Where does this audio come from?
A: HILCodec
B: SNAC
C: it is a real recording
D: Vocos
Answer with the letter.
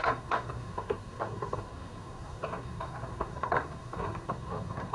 B